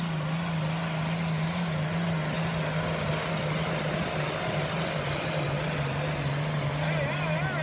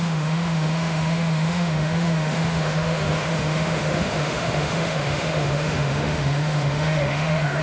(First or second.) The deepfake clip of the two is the second